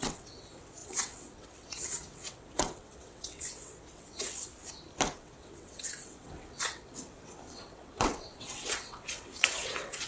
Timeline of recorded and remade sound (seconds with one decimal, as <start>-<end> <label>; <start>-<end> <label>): 0.0-4.5 remade; 4.5-5.2 recorded; 5.2-10.1 remade